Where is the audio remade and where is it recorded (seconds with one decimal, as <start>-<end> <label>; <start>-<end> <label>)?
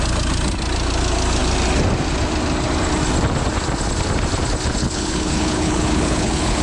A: 0.0-4.8 recorded; 4.8-6.6 remade